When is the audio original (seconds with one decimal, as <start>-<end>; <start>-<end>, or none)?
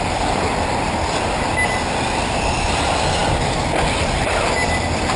0.0-5.2